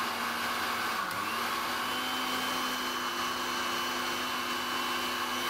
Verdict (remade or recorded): recorded